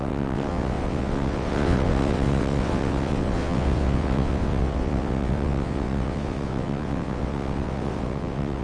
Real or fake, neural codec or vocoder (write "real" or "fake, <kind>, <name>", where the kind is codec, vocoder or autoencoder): fake, vocoder, WaveNeXt